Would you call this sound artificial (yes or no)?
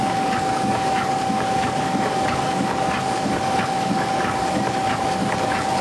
yes